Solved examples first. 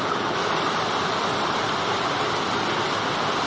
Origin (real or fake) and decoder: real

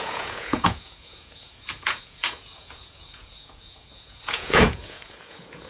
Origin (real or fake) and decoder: fake, vocoder, Vocos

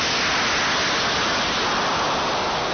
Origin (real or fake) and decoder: real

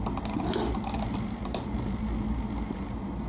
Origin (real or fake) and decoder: real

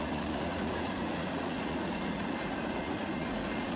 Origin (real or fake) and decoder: fake, vocoder, Vocos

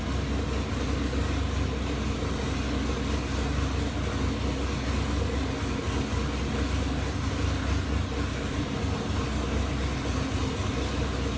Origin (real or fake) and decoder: real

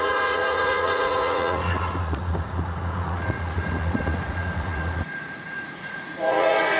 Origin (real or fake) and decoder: fake, vocoder, Vocos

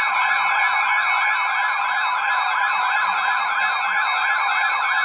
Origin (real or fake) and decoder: real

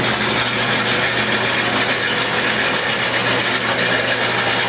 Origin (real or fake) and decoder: real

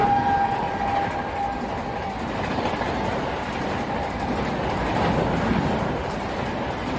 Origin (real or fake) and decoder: real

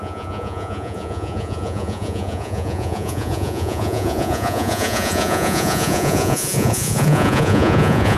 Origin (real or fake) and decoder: fake, vocoder, Vocos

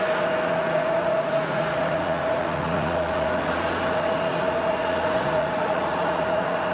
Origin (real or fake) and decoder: fake, vocoder, Vocos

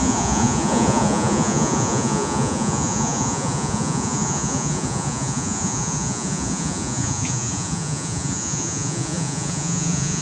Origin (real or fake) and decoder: fake, vocoder, Vocos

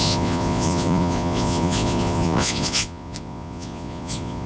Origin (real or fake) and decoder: fake, vocoder, Vocos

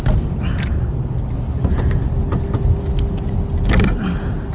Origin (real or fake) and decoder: real